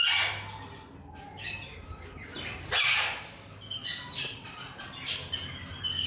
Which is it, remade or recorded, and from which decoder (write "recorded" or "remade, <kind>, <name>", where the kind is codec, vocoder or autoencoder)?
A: recorded